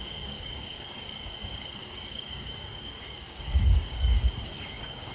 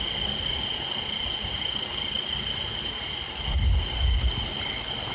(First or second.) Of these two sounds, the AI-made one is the first